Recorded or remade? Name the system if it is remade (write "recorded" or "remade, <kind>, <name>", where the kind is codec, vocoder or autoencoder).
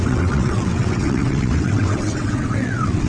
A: remade, vocoder, WaveNeXt